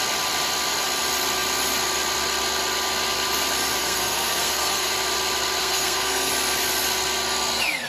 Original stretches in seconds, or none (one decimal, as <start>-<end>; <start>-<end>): 0.0-3.8; 4.9-5.6; 6.3-7.9